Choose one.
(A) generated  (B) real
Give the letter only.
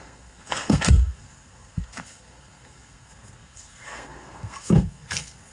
A